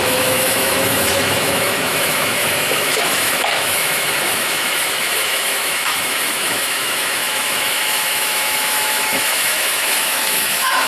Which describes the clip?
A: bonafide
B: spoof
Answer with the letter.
B